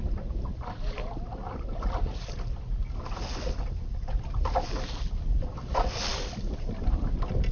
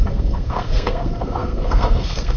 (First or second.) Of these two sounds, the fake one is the second